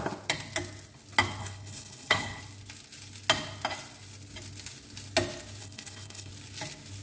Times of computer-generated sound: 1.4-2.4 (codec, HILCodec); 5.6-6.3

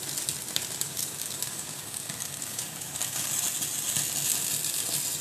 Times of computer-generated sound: 1.0-3.3 (codec, DAC)